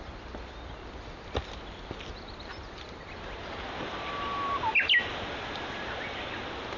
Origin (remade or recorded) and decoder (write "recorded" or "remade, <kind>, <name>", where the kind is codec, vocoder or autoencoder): recorded